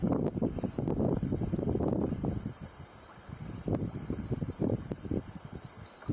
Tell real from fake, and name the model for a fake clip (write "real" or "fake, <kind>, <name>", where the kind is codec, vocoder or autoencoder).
real